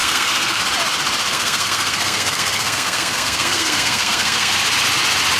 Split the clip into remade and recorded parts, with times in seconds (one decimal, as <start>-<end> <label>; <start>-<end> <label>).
0.0-0.6 remade; 0.6-1.3 recorded; 1.3-4.5 remade; 4.5-5.4 recorded